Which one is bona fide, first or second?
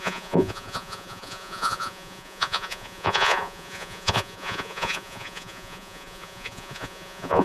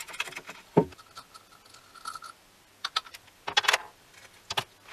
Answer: second